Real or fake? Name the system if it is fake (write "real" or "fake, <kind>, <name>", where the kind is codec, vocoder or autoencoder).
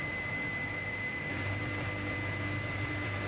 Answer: fake, vocoder, BigVGAN v2